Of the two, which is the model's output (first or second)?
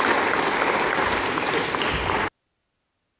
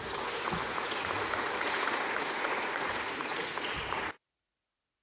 second